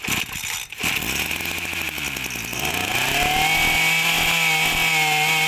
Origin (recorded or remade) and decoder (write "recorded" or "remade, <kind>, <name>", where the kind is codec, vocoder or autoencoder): recorded